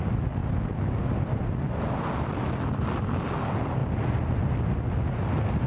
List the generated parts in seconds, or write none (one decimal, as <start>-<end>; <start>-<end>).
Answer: none